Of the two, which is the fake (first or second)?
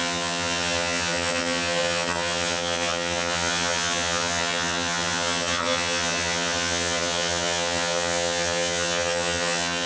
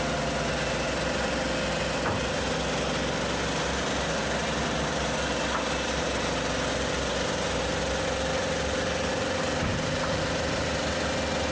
first